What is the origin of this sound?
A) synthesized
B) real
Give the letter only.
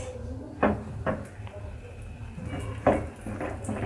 B